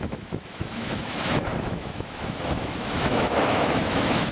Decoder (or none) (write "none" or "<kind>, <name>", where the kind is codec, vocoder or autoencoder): autoencoder, DAC-VAE